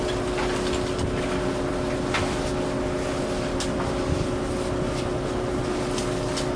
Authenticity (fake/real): real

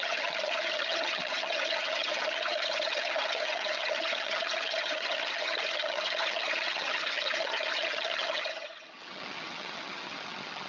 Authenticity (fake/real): fake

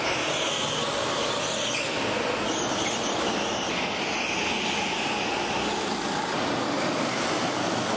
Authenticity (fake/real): real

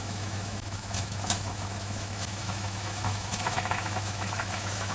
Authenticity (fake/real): fake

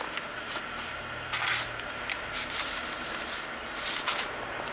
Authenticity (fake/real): real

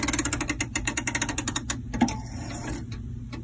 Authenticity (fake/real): real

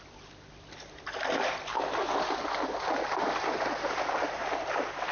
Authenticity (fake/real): real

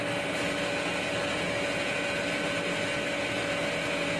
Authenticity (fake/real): real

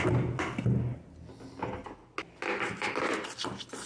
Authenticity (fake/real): real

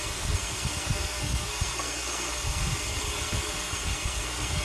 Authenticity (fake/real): fake